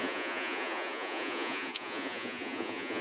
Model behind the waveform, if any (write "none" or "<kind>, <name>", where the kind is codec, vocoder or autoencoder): vocoder, Vocos